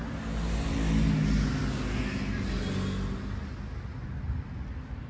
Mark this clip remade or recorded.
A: recorded